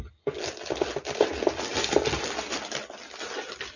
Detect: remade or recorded recorded